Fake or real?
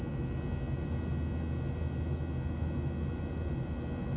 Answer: real